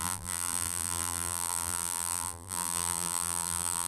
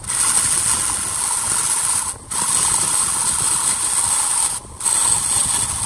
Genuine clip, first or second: second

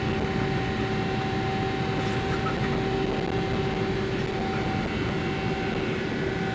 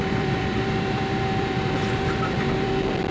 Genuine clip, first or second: first